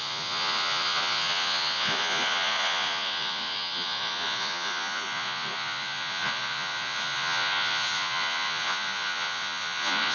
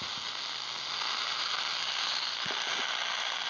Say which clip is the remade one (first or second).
first